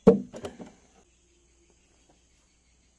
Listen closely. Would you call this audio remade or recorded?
recorded